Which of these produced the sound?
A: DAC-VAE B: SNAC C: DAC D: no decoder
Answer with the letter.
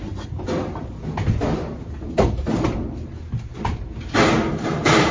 D